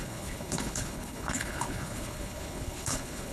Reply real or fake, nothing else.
fake